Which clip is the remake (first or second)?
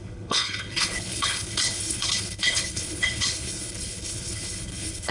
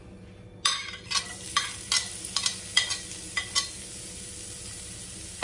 first